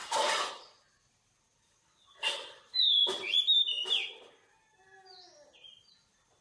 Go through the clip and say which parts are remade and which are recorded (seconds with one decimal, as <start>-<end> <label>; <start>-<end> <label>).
0.0-6.4 recorded